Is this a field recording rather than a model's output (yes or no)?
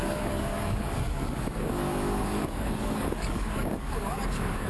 no